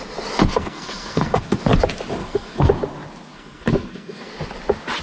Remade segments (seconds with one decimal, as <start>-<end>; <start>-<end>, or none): 0.5-1.6; 2.2-2.7; 3.3-4.3